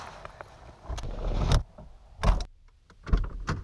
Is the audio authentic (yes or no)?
yes